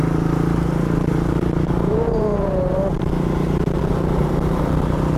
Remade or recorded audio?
remade